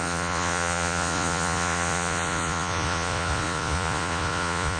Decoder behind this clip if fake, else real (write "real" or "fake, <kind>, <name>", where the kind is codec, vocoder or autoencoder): fake, vocoder, Vocos